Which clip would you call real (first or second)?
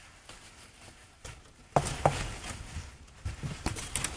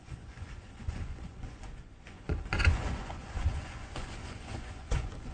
first